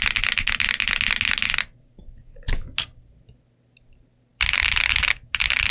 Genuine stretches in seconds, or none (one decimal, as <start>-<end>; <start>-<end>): 0.0-5.7